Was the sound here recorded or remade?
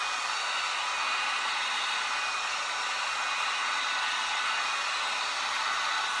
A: recorded